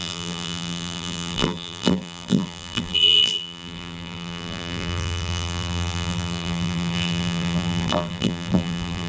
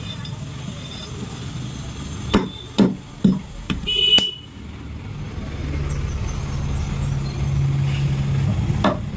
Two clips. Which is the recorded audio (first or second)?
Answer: second